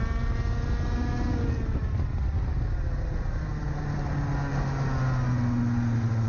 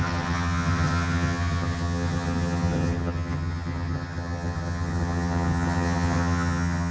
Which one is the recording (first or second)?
first